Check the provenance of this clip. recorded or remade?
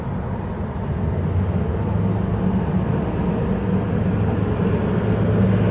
recorded